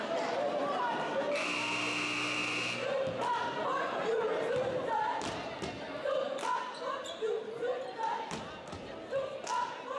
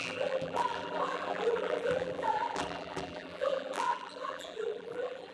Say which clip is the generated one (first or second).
second